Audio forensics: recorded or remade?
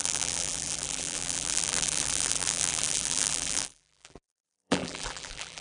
remade